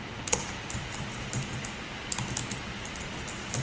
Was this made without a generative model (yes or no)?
yes